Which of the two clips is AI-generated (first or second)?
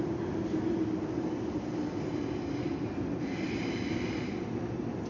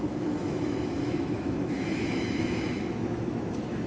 second